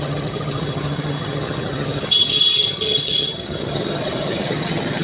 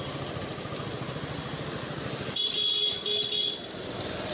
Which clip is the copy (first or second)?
first